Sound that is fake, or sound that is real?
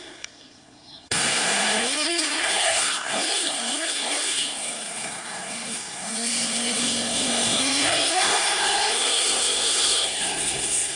fake